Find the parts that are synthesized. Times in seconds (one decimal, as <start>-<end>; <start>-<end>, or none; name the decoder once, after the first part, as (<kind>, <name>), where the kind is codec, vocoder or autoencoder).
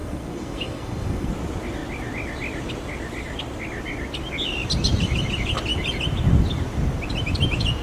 0.0-1.3 (codec, SNAC)